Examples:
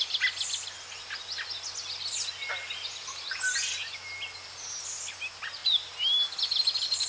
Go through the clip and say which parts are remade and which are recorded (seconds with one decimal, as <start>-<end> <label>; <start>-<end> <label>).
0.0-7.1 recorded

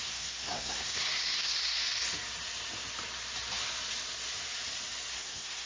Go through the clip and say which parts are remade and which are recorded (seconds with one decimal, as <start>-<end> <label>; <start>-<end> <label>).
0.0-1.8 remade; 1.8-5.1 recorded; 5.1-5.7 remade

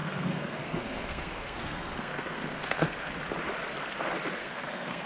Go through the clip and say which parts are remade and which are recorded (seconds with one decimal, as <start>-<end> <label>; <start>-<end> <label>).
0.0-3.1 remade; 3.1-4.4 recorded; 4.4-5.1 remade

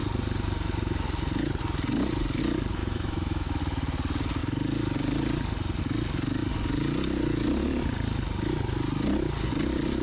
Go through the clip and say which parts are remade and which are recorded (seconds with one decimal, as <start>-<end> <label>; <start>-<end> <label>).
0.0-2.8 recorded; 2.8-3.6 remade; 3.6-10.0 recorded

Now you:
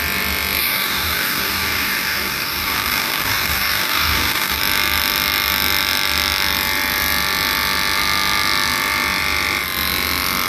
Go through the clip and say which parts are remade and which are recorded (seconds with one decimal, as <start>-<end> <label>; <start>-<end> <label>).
0.0-0.6 recorded; 0.6-4.6 remade; 4.6-10.5 recorded